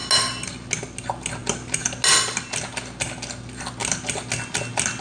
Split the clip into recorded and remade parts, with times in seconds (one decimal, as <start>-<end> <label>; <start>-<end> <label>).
0.0-5.0 recorded